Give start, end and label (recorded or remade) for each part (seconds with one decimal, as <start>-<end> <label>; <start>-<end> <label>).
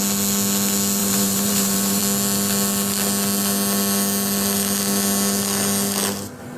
0.0-1.0 recorded; 1.0-2.0 remade; 2.0-6.6 recorded